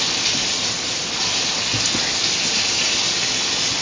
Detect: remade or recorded recorded